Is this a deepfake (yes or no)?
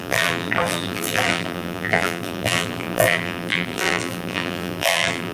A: yes